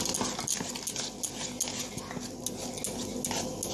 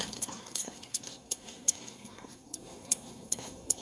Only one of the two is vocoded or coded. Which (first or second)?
second